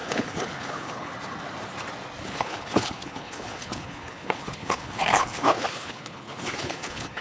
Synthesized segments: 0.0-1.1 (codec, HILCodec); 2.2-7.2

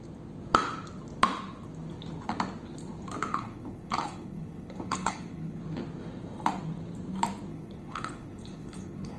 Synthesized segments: 3.3-5.6 (codec, HILCodec); 7.5-9.2

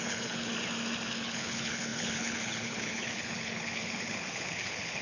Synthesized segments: 0.0-0.5 (codec, HILCodec); 1.1-5.0

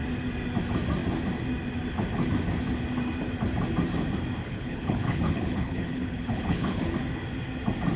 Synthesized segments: 4.4-6.8 (codec, HILCodec)

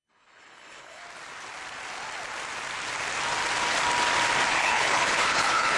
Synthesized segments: 0.0-1.0 (codec, HILCodec); 4.5-5.8

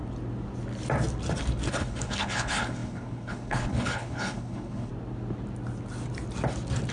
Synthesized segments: 1.7-4.9 (codec, HILCodec)

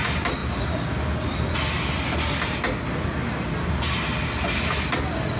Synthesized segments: none

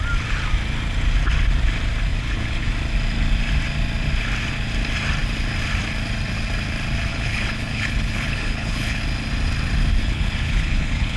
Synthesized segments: 2.1-2.7 (codec, HILCodec); 7.1-9.0; 10.0-11.2